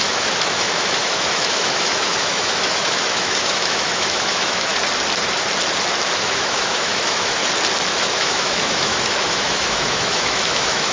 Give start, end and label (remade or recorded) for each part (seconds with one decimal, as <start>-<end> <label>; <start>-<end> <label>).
0.0-4.7 remade; 4.7-6.2 recorded; 6.2-7.4 remade; 7.4-8.0 recorded; 8.0-10.9 remade